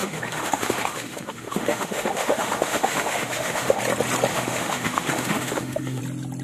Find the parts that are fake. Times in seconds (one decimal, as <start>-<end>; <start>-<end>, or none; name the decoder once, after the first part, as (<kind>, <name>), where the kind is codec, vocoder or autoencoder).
0.0-3.8 (autoencoder, DAC-VAE); 4.3-6.0